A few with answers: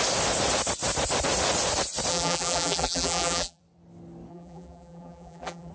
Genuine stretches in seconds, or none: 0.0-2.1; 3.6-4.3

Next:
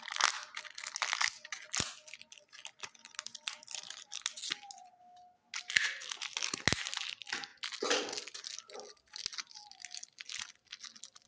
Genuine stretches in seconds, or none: 0.0-11.3

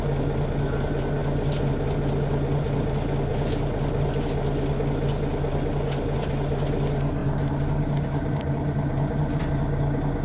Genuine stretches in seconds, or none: 0.0-7.2; 9.4-10.2

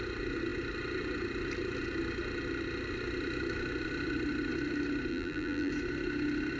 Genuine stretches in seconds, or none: 0.0-5.1; 5.7-6.6